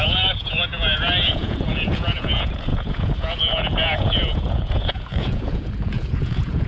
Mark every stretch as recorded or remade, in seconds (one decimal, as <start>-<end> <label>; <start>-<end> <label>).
0.0-6.7 remade